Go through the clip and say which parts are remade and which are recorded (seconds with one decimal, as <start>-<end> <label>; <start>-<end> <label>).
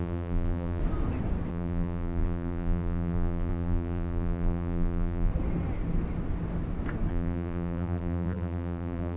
0.0-0.8 remade; 0.8-1.5 recorded; 1.5-5.3 remade; 5.3-7.1 recorded; 7.1-9.2 remade